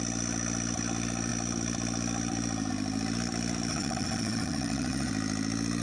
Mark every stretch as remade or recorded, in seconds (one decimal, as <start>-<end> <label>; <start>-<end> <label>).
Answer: 0.0-3.7 recorded; 3.7-5.1 remade; 5.1-5.8 recorded